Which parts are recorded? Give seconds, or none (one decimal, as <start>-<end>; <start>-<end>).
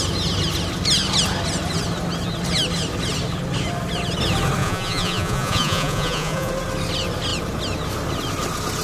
0.0-4.6; 6.5-8.8